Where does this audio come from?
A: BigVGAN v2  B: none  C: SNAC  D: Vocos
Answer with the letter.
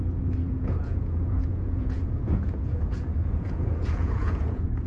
D